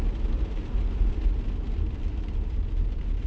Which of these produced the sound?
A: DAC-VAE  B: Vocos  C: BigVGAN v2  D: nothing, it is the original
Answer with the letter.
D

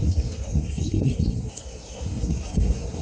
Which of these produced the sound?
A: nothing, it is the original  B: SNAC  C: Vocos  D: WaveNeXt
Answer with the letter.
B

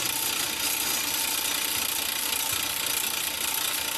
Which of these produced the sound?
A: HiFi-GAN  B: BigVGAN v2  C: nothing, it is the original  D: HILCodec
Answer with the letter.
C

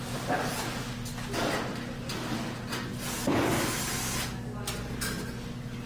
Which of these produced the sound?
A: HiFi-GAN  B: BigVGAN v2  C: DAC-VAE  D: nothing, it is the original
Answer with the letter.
D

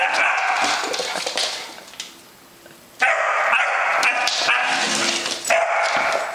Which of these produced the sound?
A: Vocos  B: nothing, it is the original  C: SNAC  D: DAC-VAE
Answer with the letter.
B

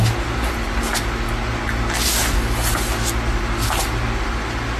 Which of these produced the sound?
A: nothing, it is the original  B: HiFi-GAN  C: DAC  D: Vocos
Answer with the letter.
A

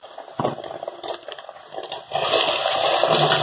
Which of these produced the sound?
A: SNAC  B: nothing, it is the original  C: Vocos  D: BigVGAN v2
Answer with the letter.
B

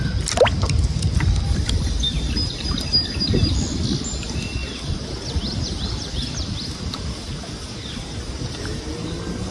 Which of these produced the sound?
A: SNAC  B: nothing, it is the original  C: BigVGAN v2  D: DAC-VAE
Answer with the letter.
B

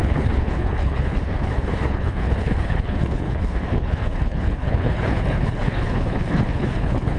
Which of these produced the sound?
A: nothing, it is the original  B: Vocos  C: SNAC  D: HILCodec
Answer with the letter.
D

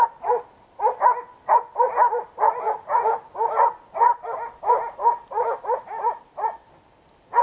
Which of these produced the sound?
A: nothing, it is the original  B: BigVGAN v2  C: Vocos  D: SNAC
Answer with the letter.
A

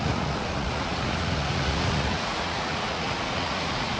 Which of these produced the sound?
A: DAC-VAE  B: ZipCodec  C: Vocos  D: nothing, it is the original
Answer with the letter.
C